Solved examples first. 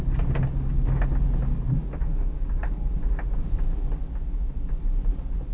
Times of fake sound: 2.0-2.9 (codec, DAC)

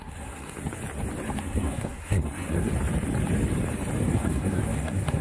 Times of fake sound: 0.0-0.6 (codec, SNAC); 1.4-2.7; 4.0-5.2